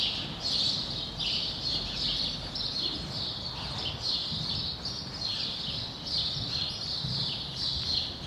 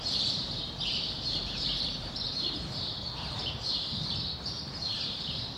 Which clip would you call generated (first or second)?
second